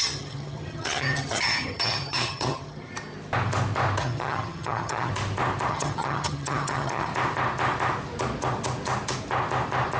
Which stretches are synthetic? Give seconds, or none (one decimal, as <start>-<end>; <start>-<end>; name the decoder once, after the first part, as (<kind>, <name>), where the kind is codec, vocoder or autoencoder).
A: 0.0-2.9 (vocoder, HiFi-GAN); 4.0-5.1; 5.7-7.1